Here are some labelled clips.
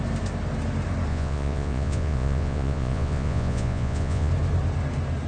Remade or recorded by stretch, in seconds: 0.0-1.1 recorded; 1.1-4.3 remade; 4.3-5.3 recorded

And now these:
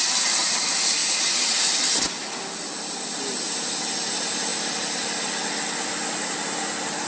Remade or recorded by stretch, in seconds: 0.0-1.0 recorded; 1.0-1.7 remade; 1.7-7.1 recorded

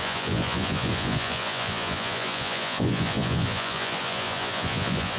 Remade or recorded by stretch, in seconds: 0.0-5.2 remade